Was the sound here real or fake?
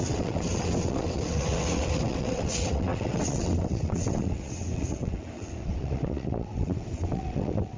fake